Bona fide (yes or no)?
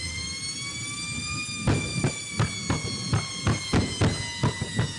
yes